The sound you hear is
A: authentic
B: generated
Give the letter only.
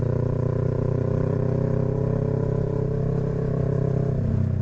A